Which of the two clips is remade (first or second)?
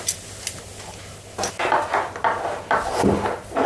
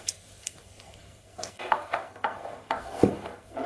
second